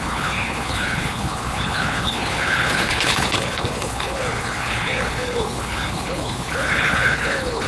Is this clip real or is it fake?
fake